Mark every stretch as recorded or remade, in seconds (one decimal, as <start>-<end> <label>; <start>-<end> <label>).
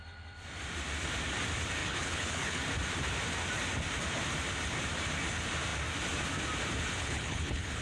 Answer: 0.0-1.8 recorded; 1.8-2.6 remade; 2.6-7.0 recorded; 7.0-7.8 remade